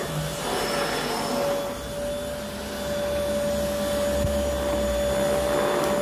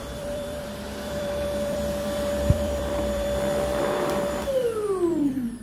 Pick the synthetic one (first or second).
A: second